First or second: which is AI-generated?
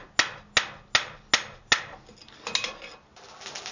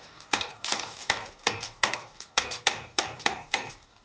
second